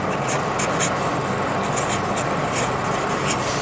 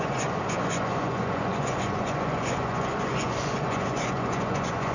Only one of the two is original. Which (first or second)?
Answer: first